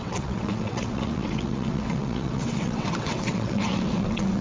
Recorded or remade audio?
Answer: remade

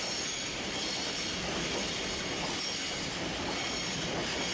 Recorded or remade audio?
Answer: recorded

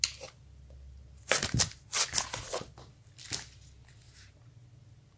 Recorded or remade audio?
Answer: recorded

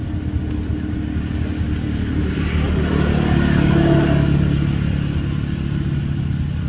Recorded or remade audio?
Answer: recorded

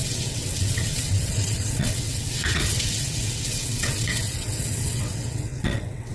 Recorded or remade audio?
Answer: remade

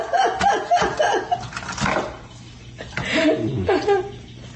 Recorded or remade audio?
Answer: recorded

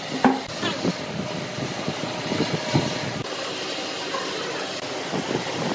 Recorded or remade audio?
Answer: recorded